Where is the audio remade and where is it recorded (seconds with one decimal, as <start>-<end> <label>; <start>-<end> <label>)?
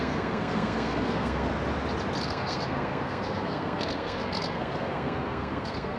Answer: 0.0-1.5 remade; 1.5-2.2 recorded; 2.2-6.0 remade